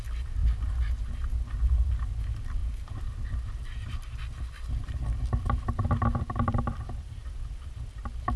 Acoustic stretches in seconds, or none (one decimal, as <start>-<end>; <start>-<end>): 0.0-0.4; 1.0-2.6; 7.5-8.4